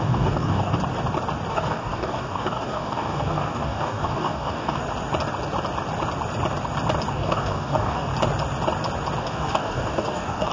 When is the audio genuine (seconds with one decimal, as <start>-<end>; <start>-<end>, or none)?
0.7-1.5; 4.8-7.1; 8.1-9.2